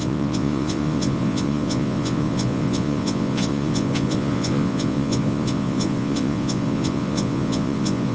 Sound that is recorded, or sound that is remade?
remade